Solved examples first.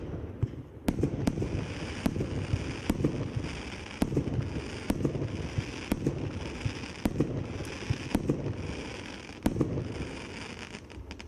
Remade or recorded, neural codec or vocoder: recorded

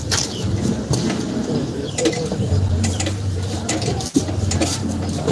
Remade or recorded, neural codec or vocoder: remade, vocoder, BigVGAN v2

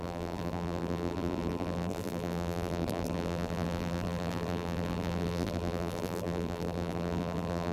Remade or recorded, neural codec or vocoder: remade, vocoder, BigVGAN v2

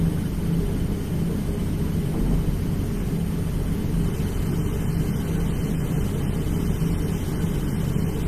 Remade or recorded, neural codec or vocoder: recorded